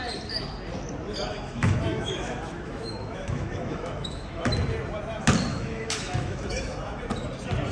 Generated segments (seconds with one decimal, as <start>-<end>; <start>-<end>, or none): 1.3-4.5; 5.5-7.0